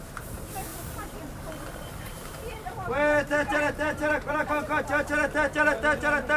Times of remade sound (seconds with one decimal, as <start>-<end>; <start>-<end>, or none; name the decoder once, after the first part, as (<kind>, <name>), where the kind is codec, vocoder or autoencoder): 0.7-4.5 (vocoder, BigVGAN v2)